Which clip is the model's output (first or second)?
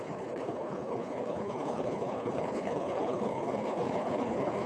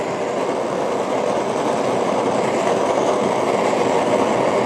first